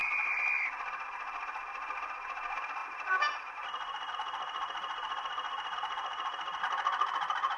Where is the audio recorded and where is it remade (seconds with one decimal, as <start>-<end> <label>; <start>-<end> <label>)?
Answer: 0.0-0.6 remade; 0.6-2.8 recorded; 2.8-7.6 remade